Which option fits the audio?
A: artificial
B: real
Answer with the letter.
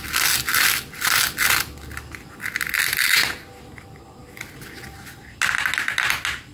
B